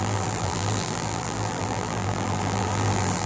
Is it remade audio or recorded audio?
remade